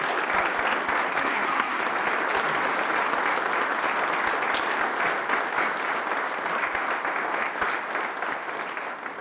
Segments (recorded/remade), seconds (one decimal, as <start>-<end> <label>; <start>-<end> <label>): 0.0-1.2 recorded; 1.2-1.8 remade; 1.8-9.2 recorded